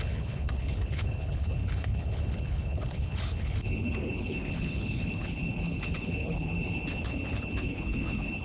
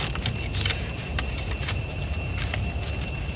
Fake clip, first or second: first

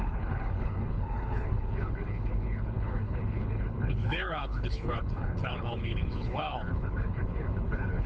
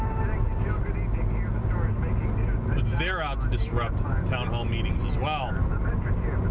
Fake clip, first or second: first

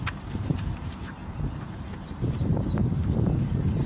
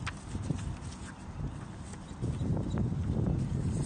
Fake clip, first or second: first